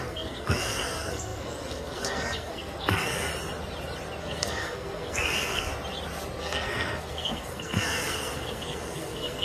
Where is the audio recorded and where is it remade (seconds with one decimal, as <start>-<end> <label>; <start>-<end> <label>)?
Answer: 0.0-3.3 remade; 3.3-4.2 recorded; 4.2-5.7 remade; 5.7-6.4 recorded; 6.4-9.4 remade